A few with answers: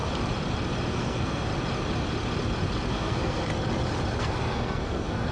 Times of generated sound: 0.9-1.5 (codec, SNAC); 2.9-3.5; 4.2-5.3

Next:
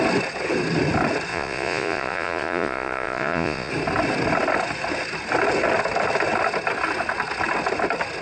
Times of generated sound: 1.3-3.7 (vocoder, Vocos)

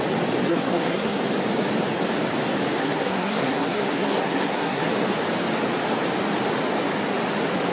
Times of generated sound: 0.5-1.2 (codec, SNAC); 2.8-4.9

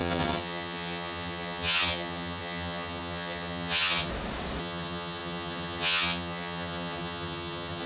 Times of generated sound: 0.0-4.1 (vocoder, HiFi-GAN); 4.6-7.9